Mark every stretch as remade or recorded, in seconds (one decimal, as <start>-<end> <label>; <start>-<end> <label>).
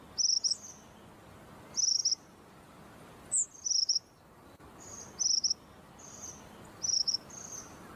0.0-8.0 recorded